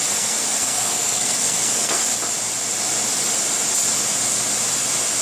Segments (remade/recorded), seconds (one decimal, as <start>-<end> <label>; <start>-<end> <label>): 0.0-2.0 remade; 2.0-5.2 recorded